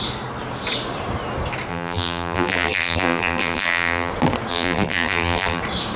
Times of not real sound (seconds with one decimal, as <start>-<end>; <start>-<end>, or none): 1.7-4.1; 4.5-5.6